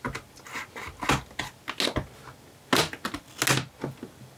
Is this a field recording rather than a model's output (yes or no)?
yes